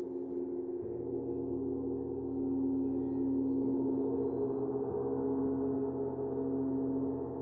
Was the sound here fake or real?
real